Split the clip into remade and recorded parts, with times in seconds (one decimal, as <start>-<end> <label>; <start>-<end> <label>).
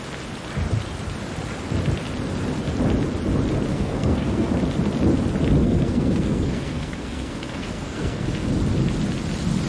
0.0-3.7 recorded; 3.7-4.5 remade; 4.5-5.6 recorded; 5.6-8.5 remade; 8.5-9.7 recorded